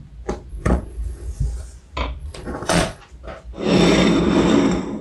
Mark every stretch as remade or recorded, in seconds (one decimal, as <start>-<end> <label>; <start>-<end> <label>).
0.0-0.5 recorded; 0.5-1.4 remade; 1.4-2.2 recorded; 2.2-3.0 remade; 3.0-5.0 recorded